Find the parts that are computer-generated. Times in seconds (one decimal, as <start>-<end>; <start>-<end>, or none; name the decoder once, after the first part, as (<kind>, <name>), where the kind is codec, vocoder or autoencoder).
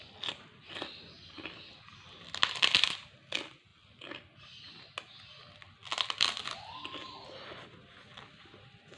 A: none